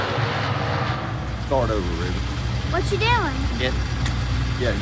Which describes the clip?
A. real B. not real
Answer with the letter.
A